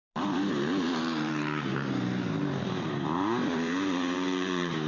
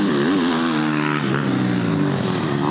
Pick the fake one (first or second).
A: first